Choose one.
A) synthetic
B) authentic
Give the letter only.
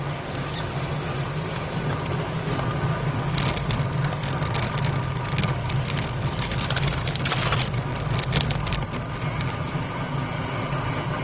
B